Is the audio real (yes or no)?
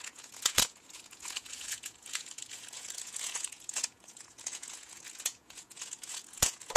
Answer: no